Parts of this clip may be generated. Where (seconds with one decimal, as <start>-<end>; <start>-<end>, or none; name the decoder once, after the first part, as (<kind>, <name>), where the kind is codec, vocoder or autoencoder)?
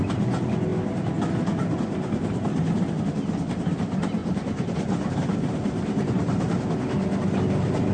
4.2-6.7 (vocoder, BigVGAN v2)